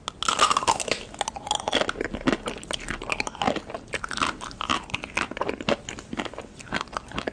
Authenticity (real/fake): real